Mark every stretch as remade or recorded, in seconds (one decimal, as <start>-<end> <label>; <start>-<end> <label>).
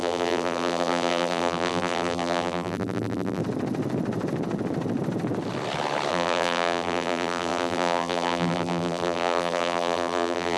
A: 0.0-3.4 remade; 3.4-6.1 recorded; 6.1-10.6 remade